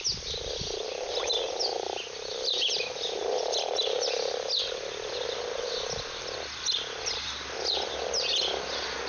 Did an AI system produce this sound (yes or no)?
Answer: no